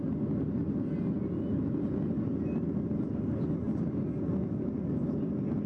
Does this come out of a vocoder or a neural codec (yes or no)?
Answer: no